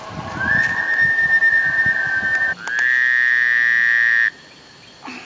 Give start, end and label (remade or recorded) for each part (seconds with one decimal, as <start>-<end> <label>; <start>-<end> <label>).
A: 0.0-5.2 recorded